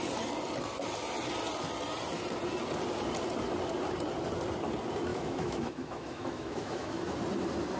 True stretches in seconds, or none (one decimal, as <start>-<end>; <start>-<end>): 0.0-5.1; 7.0-7.8